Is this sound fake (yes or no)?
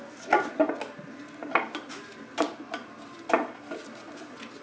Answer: no